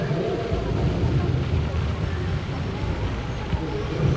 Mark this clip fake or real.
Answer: real